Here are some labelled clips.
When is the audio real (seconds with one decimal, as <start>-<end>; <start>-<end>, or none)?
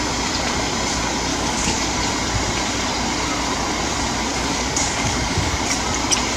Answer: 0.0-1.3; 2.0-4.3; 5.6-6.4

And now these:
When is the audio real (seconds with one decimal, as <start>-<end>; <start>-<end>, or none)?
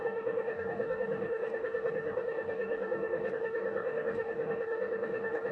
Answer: none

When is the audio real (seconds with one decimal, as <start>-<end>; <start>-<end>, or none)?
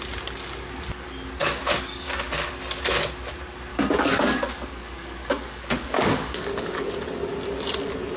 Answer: 0.0-1.4; 2.5-3.7; 6.9-8.2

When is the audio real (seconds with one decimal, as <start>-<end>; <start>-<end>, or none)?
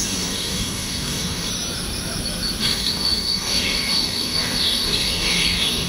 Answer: 1.5-2.6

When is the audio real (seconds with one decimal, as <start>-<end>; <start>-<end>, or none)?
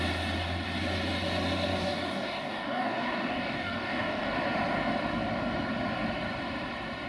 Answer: 0.0-1.8; 4.3-7.1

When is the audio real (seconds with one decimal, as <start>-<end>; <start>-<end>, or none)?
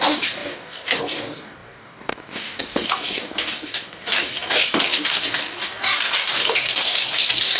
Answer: none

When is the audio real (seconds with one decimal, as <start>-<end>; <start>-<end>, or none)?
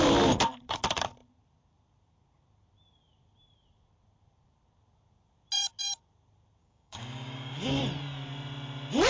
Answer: 0.0-6.6; 7.8-9.1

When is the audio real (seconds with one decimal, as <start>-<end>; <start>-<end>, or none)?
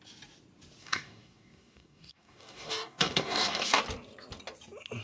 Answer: 0.0-0.8; 3.8-5.0